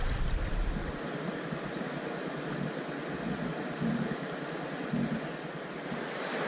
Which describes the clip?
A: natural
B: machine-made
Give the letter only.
A